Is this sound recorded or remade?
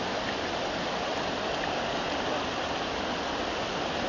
recorded